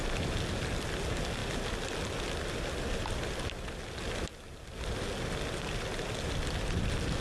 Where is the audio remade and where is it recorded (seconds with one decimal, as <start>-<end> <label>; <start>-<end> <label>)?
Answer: 0.0-7.2 recorded